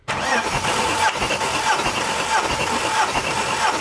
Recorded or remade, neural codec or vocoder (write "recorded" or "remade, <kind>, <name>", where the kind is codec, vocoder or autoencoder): remade, vocoder, BigVGAN v2